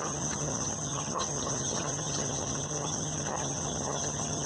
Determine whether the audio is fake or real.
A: fake